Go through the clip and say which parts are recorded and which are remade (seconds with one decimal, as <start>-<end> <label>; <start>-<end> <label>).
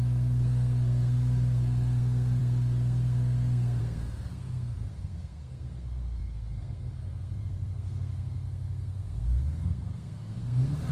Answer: 0.0-10.9 remade